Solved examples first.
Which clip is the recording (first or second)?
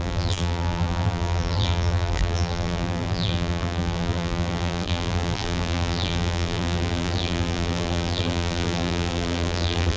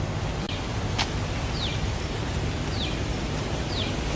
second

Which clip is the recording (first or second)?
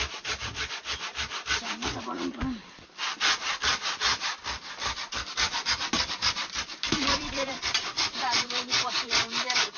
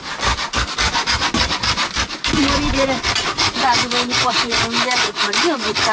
second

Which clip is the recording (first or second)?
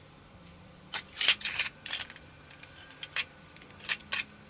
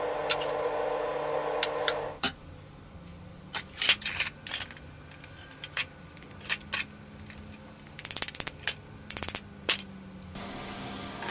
second